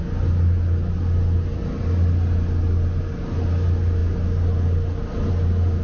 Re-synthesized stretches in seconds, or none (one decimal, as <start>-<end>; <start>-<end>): none